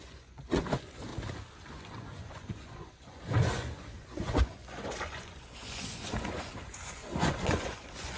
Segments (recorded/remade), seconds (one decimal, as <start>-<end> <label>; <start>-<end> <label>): 0.0-1.1 remade; 1.1-1.7 recorded; 1.7-8.2 remade